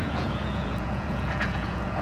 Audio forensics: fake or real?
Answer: fake